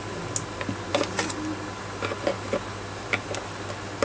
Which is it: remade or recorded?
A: recorded